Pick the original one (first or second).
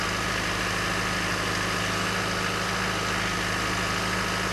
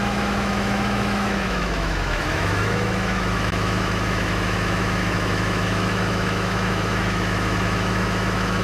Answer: first